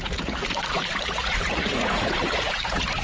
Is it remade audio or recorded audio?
remade